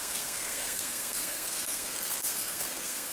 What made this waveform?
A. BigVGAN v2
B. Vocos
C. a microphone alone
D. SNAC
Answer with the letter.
D